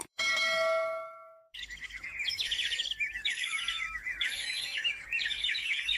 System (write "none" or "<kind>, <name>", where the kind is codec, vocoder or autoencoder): codec, DAC